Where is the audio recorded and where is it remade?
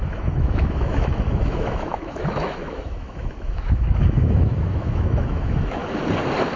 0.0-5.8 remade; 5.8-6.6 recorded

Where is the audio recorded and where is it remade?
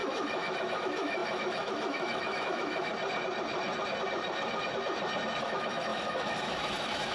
0.0-2.9 remade; 2.9-5.4 recorded; 5.4-7.1 remade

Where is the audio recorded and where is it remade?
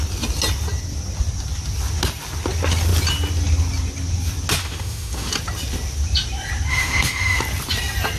0.0-4.6 recorded; 4.6-5.3 remade; 5.3-6.7 recorded; 6.7-7.4 remade; 7.4-8.2 recorded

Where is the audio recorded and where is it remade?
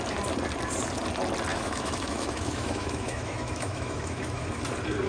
0.0-1.5 recorded; 1.5-4.6 remade; 4.6-5.1 recorded